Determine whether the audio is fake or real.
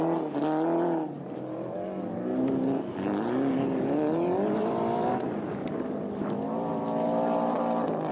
real